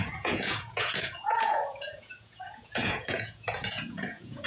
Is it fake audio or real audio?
fake